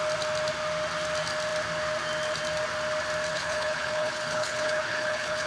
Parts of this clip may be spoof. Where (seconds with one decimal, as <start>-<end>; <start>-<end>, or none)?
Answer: 3.3-5.5